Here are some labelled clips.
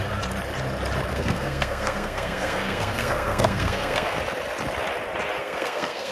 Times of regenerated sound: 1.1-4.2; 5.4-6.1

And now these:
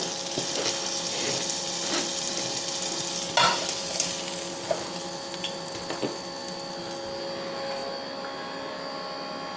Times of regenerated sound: none